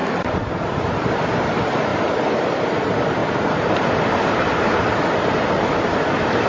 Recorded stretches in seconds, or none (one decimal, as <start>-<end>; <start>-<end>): 0.0-0.6; 1.9-2.6